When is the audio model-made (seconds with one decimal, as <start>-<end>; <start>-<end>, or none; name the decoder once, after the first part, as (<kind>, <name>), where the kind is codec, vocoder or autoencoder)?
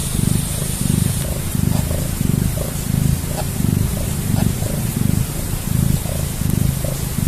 0.0-1.8 (vocoder, BigVGAN v2); 3.9-6.1